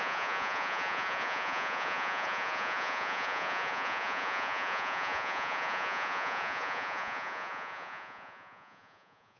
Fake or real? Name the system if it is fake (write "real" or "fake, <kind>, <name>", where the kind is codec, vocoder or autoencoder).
fake, vocoder, Vocos